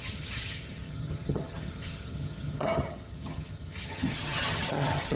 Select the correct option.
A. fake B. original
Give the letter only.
A